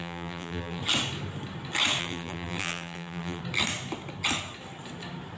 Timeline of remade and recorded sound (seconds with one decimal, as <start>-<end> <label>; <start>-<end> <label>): 0.0-0.8 remade; 0.8-2.0 recorded; 2.0-3.4 remade; 3.4-5.4 recorded